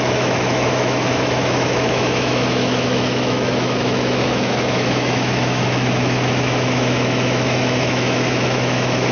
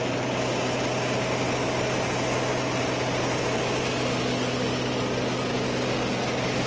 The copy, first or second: first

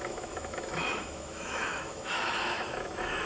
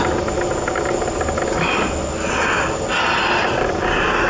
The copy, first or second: first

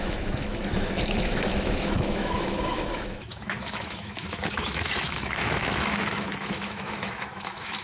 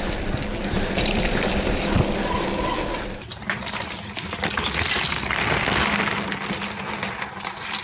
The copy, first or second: first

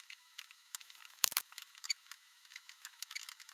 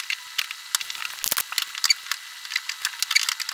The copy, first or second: first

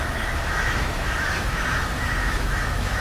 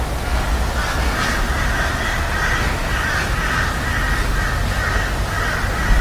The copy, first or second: first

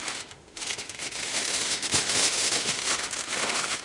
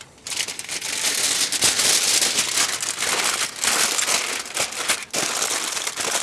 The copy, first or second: first